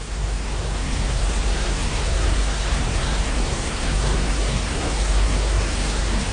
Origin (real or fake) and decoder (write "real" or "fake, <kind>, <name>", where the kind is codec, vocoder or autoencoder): fake, codec, SNAC